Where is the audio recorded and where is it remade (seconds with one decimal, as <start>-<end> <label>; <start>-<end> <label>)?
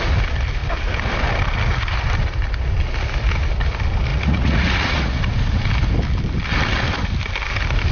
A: 0.0-4.1 recorded; 4.1-5.2 remade; 5.2-7.9 recorded